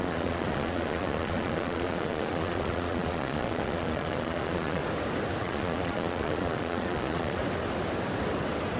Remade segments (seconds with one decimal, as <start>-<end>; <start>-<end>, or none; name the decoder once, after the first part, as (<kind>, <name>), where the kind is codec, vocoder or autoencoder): 0.0-4.8 (vocoder, Vocos); 5.4-7.4

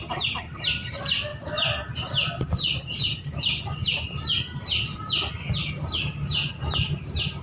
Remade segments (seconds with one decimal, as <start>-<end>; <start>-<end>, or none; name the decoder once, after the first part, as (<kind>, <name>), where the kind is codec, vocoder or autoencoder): none

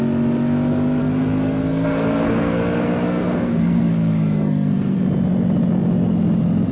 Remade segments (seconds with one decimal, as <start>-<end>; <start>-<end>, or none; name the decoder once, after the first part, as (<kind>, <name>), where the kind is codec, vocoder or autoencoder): 1.0-5.0 (codec, SNAC)

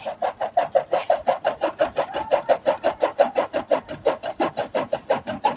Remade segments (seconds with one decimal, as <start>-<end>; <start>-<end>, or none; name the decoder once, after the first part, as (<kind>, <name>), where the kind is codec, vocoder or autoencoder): 1.0-4.4 (vocoder, BigVGAN v2)